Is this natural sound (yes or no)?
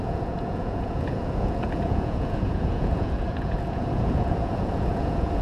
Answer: no